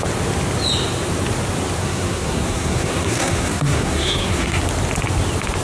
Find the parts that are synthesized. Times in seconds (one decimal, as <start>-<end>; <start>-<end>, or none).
1.8-4.6